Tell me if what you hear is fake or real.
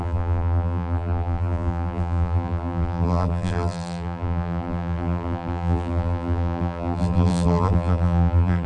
fake